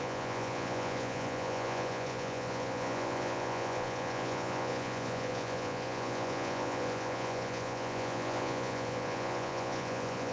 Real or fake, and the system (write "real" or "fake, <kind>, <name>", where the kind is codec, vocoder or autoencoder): fake, vocoder, Vocos